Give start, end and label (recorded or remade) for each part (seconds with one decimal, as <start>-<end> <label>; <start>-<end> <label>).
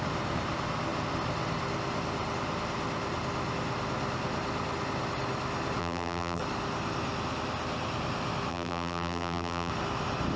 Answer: 0.0-5.8 recorded; 5.8-6.4 remade; 6.4-8.5 recorded; 8.5-9.7 remade; 9.7-10.4 recorded